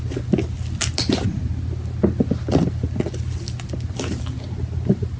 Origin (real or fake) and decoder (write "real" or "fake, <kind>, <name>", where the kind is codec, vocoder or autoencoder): real